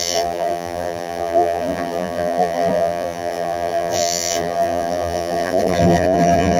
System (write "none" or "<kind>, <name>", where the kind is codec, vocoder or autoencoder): vocoder, BigVGAN v2